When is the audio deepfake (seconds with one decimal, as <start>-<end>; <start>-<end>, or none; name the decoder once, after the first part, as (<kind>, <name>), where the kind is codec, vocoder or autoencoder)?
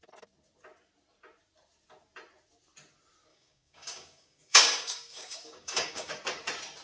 3.3-6.1 (codec, DAC)